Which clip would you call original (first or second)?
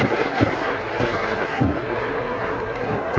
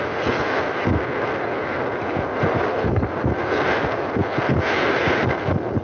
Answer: second